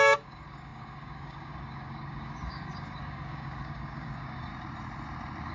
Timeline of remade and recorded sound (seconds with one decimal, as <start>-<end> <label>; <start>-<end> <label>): 0.0-4.5 remade; 4.5-5.5 recorded

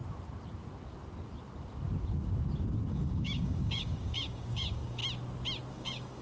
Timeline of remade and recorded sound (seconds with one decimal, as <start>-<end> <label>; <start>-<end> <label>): 0.0-2.9 recorded; 2.9-5.0 remade; 5.0-5.7 recorded; 5.7-6.2 remade

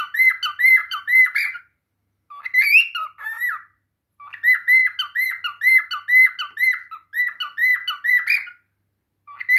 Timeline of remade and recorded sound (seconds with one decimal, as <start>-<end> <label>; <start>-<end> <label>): 0.0-0.8 recorded; 0.8-1.6 remade; 1.6-9.6 recorded

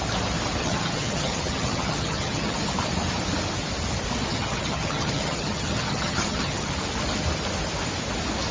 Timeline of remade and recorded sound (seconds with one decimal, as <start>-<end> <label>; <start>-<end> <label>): 0.0-0.6 recorded; 0.6-2.7 remade; 2.7-4.3 recorded; 4.3-6.7 remade; 6.7-8.5 recorded

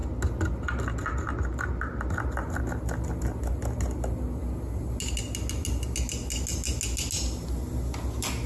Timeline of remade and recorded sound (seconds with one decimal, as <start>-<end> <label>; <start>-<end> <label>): 0.0-8.5 recorded

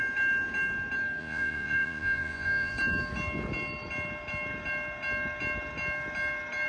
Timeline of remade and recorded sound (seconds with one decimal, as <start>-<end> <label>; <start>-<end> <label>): 0.0-1.2 recorded; 1.2-2.7 remade; 2.7-6.7 recorded